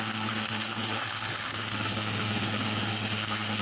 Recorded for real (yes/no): no